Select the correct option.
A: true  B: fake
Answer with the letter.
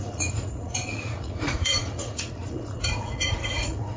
B